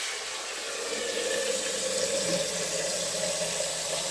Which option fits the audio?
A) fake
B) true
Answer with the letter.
B